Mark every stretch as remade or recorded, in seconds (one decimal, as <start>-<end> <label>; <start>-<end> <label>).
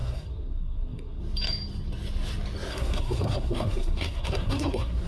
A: 0.0-1.2 remade; 1.2-2.7 recorded; 2.7-5.1 remade